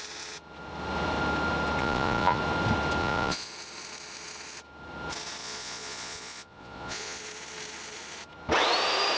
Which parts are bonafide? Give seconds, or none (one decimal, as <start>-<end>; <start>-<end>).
0.0-1.8; 2.4-3.0; 3.5-5.4; 7.2-9.2